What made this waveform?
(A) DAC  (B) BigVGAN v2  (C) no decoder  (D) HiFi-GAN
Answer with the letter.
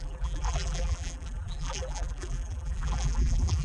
B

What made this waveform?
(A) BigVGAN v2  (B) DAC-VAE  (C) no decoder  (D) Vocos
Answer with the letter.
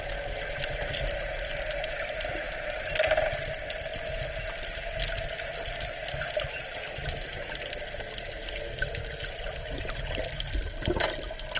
C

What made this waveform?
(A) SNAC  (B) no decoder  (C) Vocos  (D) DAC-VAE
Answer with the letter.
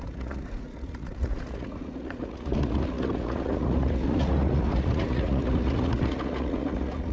C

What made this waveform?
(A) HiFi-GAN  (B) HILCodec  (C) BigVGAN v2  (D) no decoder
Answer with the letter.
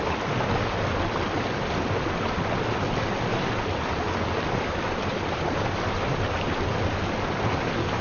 D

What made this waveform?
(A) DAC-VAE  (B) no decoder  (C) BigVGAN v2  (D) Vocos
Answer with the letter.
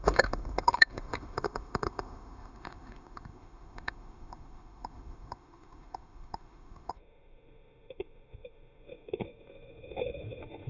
A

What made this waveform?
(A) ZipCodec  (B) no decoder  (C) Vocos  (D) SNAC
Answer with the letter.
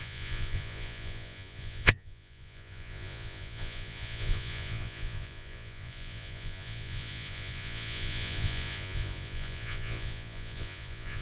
C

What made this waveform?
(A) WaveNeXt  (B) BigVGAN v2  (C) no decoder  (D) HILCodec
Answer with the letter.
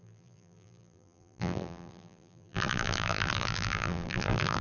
B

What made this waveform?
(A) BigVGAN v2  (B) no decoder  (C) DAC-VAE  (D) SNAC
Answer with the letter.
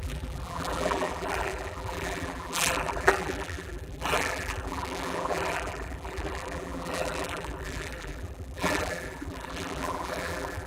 A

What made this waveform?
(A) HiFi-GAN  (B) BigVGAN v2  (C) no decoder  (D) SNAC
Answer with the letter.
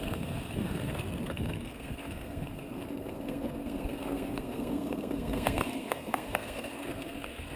D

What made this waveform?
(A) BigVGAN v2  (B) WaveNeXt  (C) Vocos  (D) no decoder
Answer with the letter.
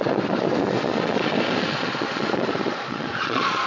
C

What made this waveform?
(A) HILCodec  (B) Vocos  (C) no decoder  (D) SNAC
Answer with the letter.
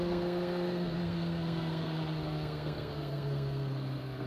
D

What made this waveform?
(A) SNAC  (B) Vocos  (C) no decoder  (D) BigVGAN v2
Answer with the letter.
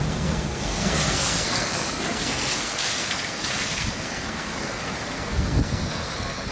A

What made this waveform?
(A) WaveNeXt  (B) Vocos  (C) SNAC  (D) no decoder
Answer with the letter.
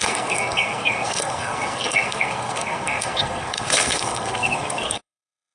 C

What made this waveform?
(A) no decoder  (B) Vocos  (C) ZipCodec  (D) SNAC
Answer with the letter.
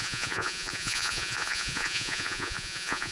B